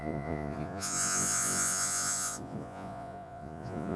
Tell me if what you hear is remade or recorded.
remade